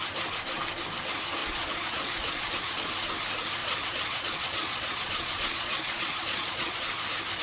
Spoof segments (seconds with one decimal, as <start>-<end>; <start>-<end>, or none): 1.4-2.9; 3.6-6.8